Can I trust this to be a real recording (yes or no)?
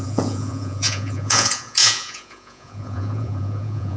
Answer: no